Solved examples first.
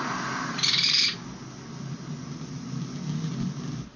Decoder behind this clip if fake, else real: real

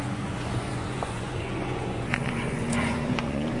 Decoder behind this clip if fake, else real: fake, vocoder, Vocos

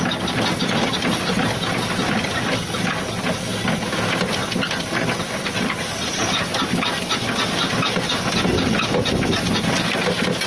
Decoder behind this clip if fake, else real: real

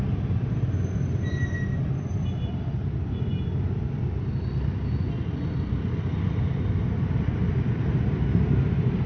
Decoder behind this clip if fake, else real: real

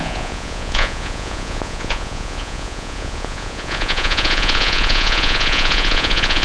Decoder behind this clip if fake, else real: fake, vocoder, Vocos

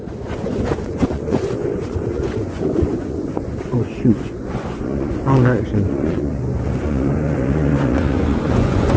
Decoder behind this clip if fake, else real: fake, vocoder, Vocos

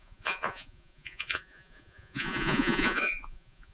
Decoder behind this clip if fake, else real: fake, vocoder, Vocos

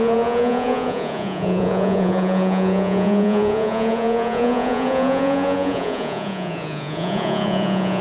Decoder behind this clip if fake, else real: fake, vocoder, Vocos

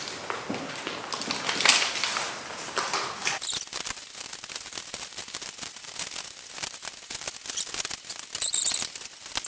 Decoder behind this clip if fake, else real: real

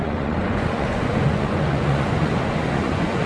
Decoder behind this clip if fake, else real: fake, vocoder, Vocos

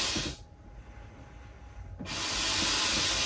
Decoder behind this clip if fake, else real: real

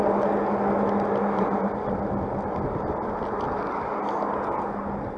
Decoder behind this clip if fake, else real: real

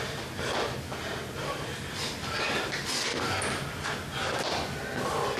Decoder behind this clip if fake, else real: real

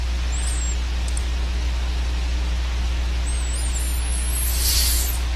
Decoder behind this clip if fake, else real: real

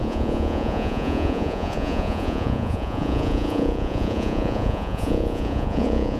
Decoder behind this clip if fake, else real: fake, vocoder, Vocos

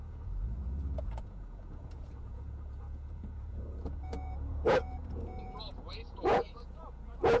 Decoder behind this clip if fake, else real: fake, vocoder, Vocos